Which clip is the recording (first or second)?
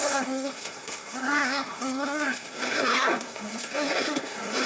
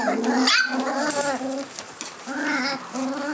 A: second